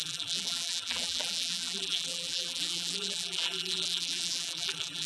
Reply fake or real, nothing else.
fake